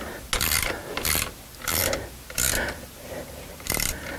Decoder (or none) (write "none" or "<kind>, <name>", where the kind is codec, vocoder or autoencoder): none